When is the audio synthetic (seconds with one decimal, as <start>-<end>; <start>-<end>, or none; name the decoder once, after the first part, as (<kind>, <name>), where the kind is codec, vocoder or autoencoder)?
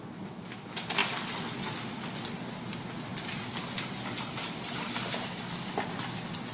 none